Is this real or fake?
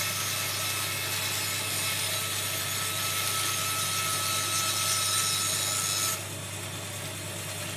real